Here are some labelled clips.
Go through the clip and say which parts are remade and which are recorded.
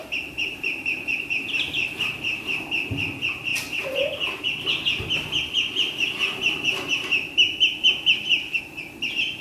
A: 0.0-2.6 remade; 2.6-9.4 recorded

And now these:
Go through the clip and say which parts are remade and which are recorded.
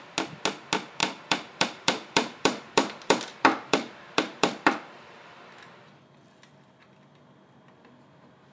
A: 0.0-1.0 recorded; 1.0-5.5 remade; 5.5-8.5 recorded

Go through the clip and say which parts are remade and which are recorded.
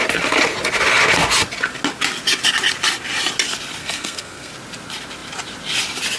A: 0.0-3.8 recorded; 3.8-4.5 remade; 4.5-6.2 recorded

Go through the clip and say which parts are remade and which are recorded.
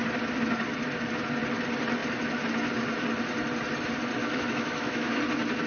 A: 0.0-4.2 recorded; 4.2-5.2 remade; 5.2-5.7 recorded